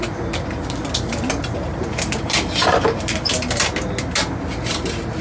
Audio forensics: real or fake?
real